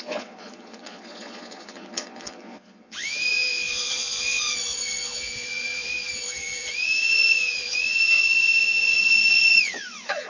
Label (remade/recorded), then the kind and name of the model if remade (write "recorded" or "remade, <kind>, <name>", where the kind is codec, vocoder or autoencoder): remade, vocoder, Vocos